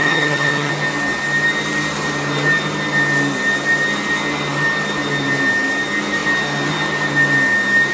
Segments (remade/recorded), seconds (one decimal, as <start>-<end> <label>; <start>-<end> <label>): 0.0-0.7 remade; 0.7-7.9 recorded